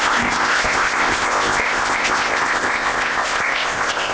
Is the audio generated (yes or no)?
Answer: yes